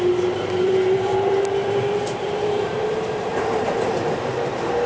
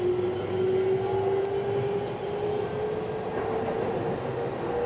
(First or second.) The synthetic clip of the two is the first